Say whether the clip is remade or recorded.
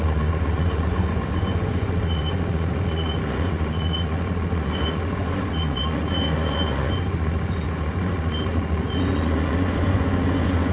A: remade